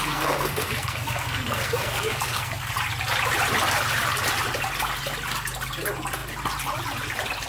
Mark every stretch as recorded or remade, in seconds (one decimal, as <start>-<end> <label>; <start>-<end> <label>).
0.0-2.7 remade; 2.7-7.5 recorded